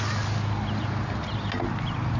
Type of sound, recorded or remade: recorded